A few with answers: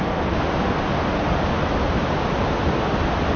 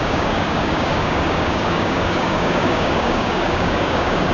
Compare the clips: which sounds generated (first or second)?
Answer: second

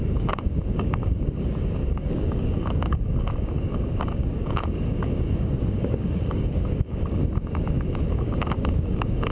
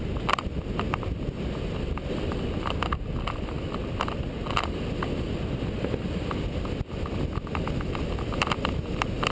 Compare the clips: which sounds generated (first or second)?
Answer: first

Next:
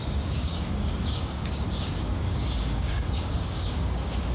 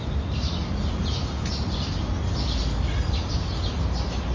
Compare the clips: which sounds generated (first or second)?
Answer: first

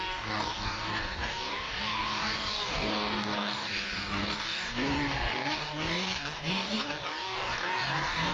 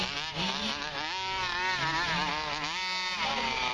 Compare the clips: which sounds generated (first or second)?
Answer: first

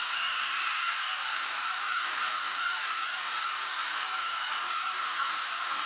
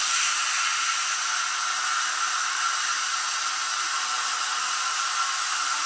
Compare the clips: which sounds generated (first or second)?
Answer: first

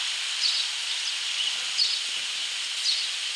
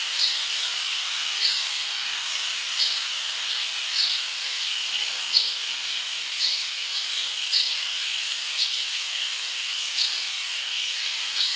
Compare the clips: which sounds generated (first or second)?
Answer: second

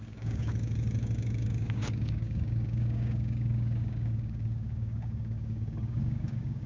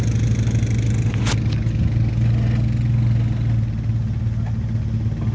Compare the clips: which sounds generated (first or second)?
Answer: first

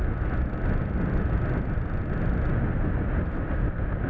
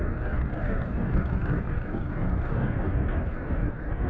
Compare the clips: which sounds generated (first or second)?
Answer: second